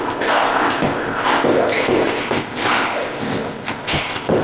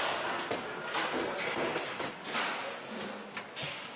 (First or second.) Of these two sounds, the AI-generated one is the first